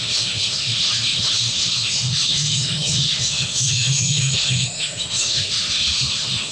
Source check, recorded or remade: remade